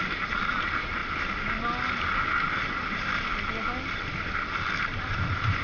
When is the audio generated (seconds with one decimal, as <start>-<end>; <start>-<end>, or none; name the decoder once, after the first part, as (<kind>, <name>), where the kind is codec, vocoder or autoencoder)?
none